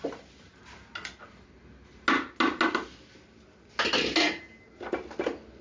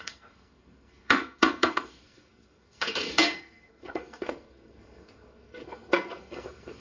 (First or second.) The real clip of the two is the first